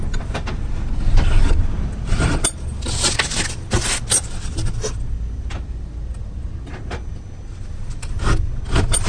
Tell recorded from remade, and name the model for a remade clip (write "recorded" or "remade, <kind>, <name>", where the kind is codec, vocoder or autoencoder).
recorded